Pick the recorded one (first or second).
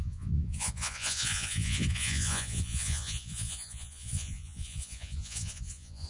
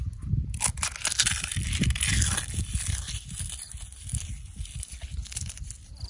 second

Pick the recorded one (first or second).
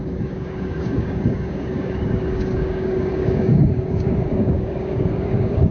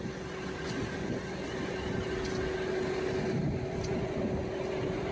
second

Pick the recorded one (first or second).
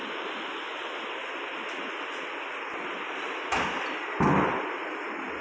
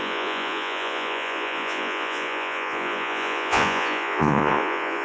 first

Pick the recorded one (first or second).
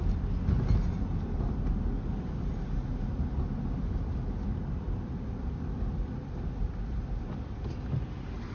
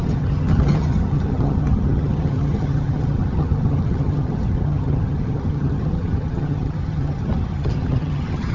first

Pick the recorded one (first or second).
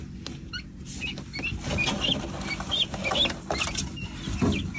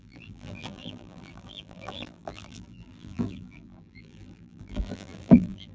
first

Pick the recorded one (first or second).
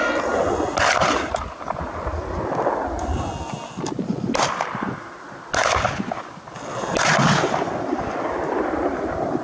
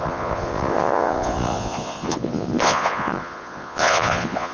first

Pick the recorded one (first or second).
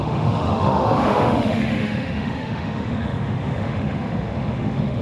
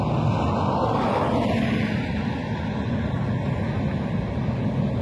second